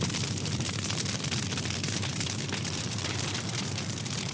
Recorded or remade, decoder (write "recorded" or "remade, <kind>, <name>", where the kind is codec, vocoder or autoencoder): remade, vocoder, BigVGAN v2